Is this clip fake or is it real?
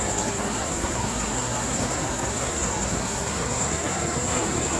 fake